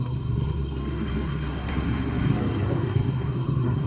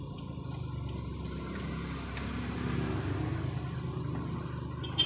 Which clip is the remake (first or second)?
first